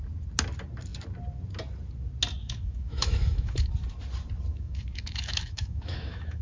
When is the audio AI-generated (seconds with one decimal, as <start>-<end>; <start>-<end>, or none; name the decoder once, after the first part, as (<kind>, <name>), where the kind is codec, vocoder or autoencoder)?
2.4-3.7 (autoencoder, DAC-VAE); 4.5-6.4